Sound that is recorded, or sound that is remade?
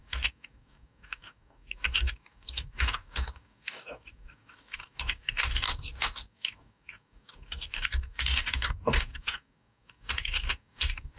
remade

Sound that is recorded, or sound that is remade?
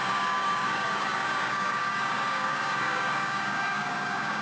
remade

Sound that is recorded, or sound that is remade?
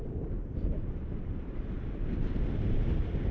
recorded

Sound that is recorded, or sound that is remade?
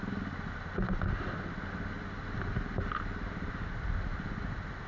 recorded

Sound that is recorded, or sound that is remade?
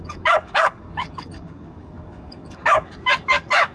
remade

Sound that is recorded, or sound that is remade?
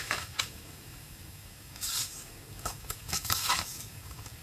remade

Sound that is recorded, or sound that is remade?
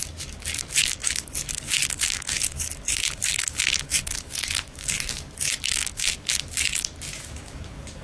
remade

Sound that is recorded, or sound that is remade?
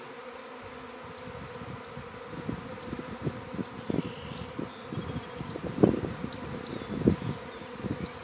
recorded